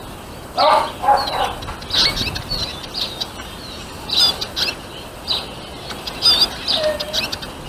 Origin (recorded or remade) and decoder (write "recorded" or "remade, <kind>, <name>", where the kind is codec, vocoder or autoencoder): recorded